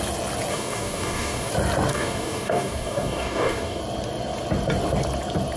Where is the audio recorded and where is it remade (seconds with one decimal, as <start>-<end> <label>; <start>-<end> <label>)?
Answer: 0.0-0.5 recorded; 0.5-1.5 remade; 1.5-1.9 recorded; 1.9-3.8 remade; 3.8-5.6 recorded